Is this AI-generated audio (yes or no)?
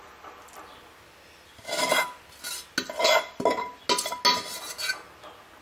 no